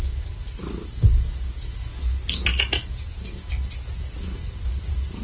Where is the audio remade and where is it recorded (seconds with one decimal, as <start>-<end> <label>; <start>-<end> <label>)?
0.0-5.2 recorded